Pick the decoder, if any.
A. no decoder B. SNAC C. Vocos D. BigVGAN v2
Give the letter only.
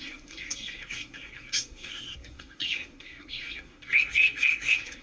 B